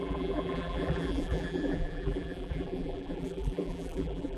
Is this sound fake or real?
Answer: fake